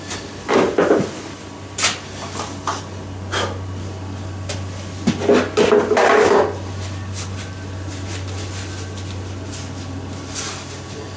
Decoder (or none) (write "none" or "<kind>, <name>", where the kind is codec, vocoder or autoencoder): none